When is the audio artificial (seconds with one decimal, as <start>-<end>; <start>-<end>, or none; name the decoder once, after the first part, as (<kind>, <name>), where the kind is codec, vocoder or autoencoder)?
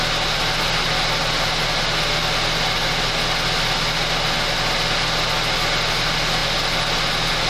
none